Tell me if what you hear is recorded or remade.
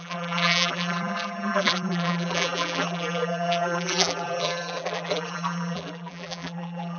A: remade